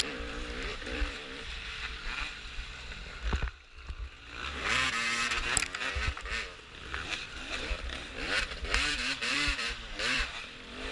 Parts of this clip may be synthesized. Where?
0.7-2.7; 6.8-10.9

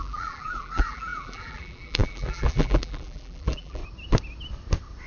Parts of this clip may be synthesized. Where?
0.0-3.8

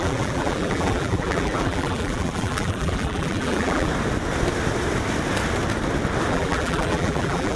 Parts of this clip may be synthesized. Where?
0.0-3.9; 6.3-7.6

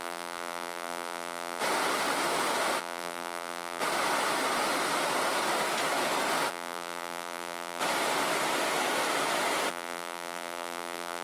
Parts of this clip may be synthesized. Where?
0.0-1.6; 2.8-3.8; 6.5-7.8; 9.7-11.2

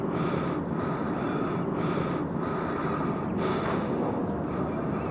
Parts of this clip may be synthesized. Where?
none

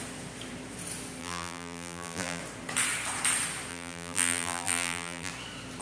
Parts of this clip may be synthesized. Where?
1.2-2.4; 3.7-5.3

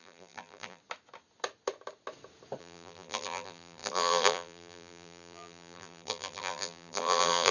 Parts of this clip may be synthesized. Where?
0.0-0.8; 2.6-7.5